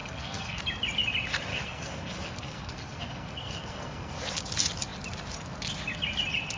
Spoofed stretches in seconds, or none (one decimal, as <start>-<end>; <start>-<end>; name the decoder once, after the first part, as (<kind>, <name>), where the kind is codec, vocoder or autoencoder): 0.0-0.6 (codec, SNAC); 1.5-4.2